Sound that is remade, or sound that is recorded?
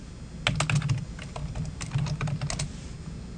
recorded